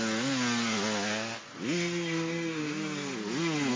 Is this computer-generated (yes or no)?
no